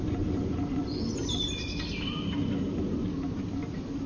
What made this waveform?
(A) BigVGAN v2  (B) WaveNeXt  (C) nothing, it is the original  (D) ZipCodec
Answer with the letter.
C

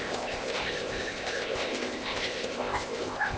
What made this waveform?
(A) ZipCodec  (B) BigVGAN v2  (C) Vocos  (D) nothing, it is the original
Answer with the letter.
A